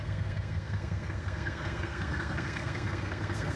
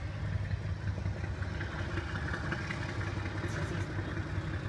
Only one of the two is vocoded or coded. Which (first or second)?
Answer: first